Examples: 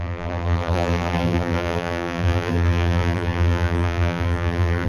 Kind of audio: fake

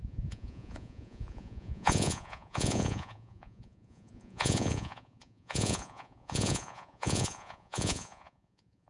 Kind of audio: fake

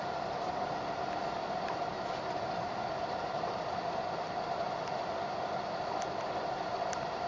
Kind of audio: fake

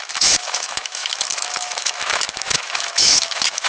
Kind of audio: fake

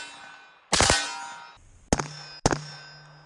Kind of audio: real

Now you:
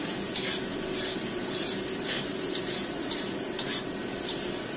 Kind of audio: real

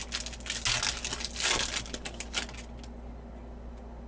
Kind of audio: real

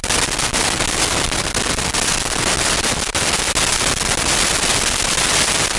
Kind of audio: real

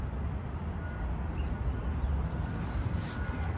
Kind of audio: real